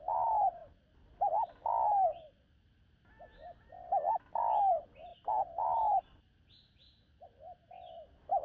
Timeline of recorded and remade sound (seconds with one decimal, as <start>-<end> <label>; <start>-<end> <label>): 0.0-8.4 recorded